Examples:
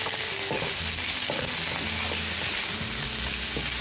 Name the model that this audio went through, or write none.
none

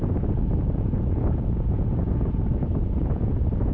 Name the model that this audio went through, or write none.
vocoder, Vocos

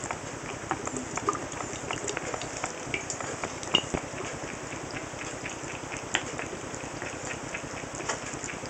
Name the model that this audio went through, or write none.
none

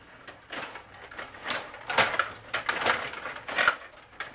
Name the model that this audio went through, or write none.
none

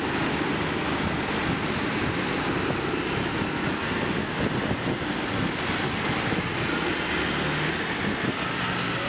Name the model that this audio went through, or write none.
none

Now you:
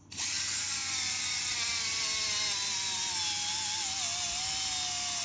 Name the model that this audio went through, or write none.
none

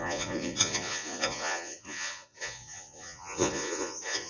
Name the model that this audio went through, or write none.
vocoder, Vocos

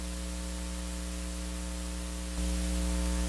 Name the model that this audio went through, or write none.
none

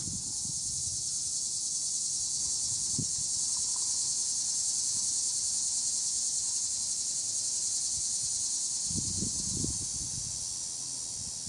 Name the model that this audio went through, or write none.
none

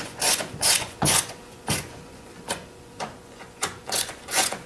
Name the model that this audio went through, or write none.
vocoder, Vocos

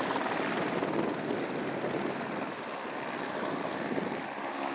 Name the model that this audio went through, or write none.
none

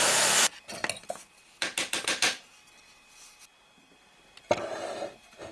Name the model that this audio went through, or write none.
none